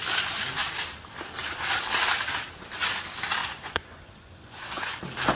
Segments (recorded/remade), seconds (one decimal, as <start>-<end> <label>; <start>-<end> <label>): 0.0-3.4 recorded; 3.4-5.0 remade; 5.0-5.4 recorded